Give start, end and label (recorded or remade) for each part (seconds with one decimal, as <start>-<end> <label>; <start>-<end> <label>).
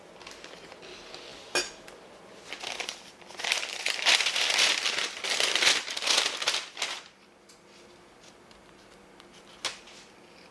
0.0-10.5 recorded